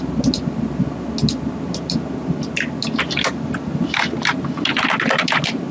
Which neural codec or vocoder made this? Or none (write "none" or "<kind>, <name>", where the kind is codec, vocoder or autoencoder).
none